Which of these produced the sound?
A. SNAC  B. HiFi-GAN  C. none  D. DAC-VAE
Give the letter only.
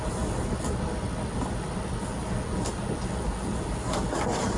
C